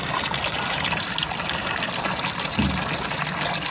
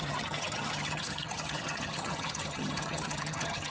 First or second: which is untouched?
first